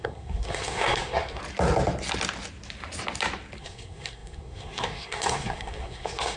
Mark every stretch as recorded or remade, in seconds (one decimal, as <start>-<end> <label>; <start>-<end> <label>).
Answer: 0.0-1.4 remade; 1.4-3.6 recorded; 3.6-6.4 remade